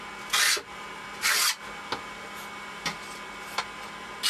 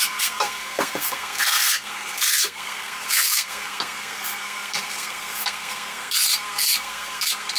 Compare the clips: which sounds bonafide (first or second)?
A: first